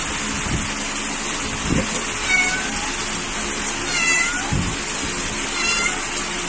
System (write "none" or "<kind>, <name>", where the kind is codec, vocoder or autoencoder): none